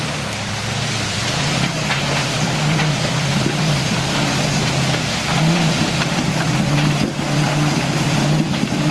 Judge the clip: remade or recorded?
remade